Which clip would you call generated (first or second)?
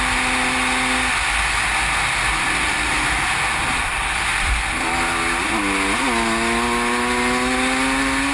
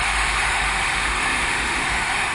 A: second